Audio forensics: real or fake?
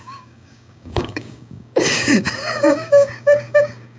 fake